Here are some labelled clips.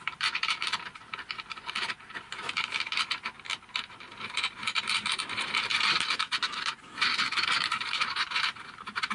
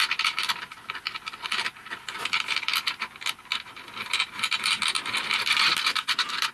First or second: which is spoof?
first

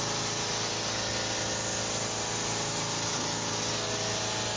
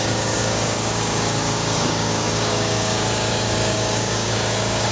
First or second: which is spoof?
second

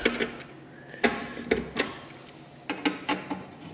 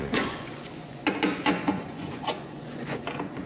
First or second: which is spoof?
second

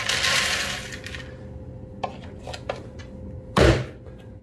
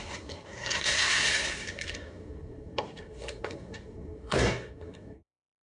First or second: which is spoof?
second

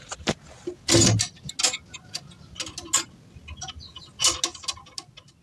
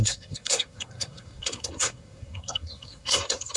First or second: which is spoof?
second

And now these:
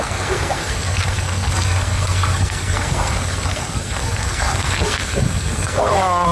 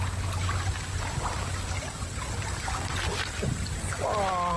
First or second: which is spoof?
first